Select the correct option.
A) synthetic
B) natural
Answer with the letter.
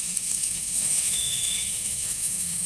A